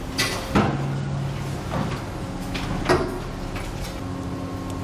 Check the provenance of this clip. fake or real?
real